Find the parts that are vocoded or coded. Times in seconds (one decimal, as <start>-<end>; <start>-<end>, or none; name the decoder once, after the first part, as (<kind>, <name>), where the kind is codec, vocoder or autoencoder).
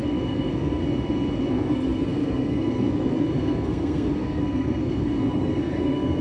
0.0-0.8 (codec, SNAC); 1.5-6.2